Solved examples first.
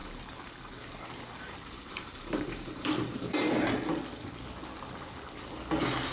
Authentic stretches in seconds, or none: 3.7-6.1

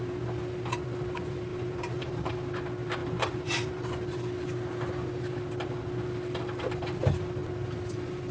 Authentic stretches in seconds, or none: 0.0-1.5; 2.3-3.0; 3.9-8.3

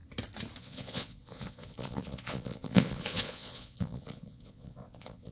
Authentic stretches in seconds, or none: 0.0-0.6